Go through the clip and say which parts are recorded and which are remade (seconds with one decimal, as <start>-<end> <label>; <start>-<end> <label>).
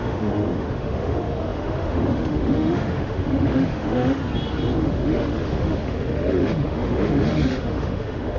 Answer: 0.0-4.2 remade; 4.2-4.8 recorded; 4.8-8.4 remade